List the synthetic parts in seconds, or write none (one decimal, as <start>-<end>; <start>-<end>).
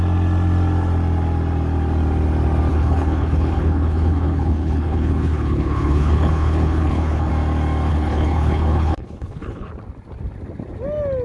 2.7-7.3; 7.9-9.7